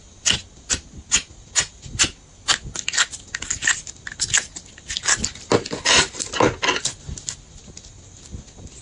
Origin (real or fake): real